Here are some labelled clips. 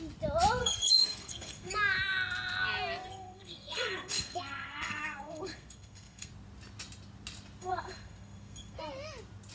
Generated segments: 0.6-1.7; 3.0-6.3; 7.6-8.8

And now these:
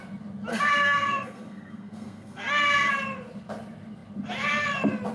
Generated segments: 0.5-2.9

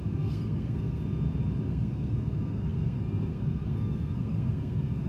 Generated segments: 0.0-1.0; 1.7-5.1

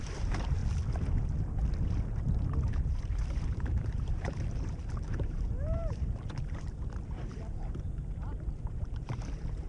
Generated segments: 0.0-0.6; 2.2-9.7

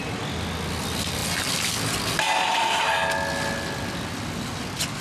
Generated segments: none